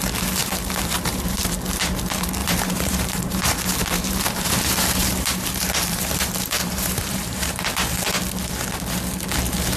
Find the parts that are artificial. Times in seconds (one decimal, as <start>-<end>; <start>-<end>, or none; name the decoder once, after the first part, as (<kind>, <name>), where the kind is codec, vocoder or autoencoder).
0.4-1.4 (vocoder, BigVGAN v2); 2.4-7.6